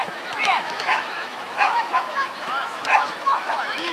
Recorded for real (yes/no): no